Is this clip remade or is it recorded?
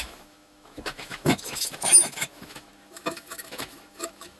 remade